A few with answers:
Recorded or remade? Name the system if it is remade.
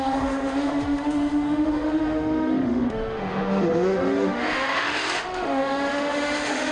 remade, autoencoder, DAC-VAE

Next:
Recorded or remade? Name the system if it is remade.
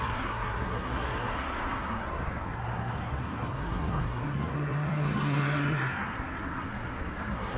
remade, codec, SNAC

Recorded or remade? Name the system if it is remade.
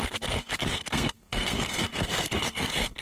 remade, codec, SNAC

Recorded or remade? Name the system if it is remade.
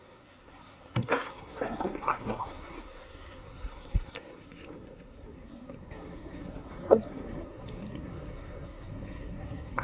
remade, codec, SNAC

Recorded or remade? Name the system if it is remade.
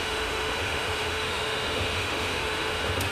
remade, autoencoder, DAC-VAE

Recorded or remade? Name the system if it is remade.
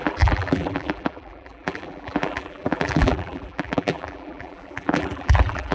remade, vocoder, BigVGAN v2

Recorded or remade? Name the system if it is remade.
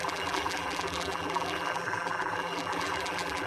remade, vocoder, BigVGAN v2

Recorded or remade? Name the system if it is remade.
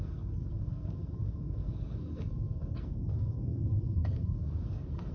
remade, codec, SNAC